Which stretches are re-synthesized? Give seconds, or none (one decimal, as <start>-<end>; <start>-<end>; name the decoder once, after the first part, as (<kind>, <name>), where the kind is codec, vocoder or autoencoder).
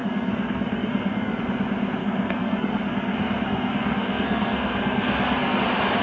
0.0-1.4 (codec, SNAC); 2.0-5.6